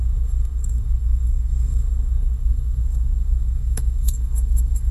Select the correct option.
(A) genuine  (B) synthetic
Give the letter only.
B